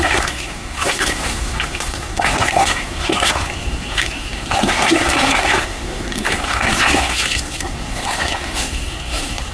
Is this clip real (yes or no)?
no